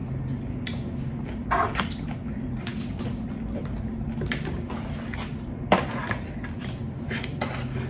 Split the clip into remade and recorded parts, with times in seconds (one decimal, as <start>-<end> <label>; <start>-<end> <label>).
0.0-7.9 recorded